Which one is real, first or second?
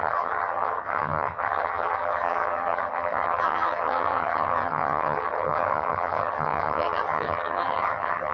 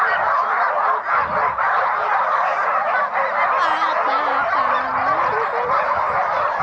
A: second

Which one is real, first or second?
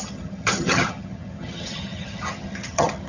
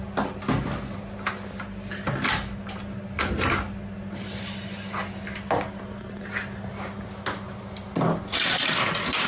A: second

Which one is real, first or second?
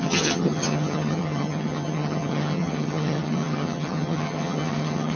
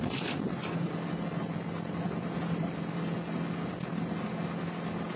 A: second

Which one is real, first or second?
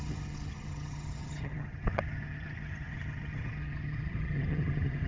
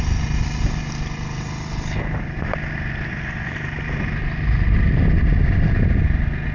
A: second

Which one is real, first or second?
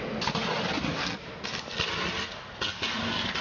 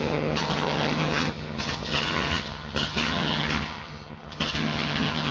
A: first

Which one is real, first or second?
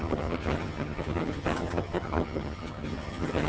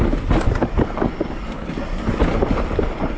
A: second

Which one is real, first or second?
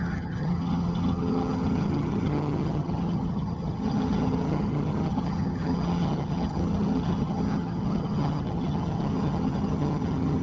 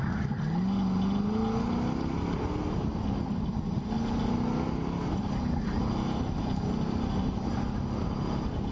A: second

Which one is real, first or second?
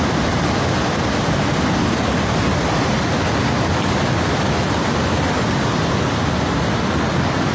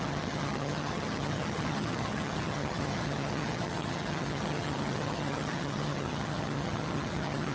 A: first